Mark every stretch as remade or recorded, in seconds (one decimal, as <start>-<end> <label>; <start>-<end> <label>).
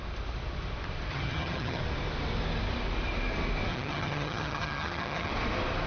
0.0-1.1 recorded; 1.1-1.8 remade; 1.8-3.7 recorded; 3.7-5.3 remade; 5.3-5.9 recorded